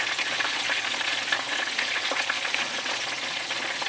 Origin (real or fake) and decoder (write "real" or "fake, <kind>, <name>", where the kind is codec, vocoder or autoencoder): fake, vocoder, Vocos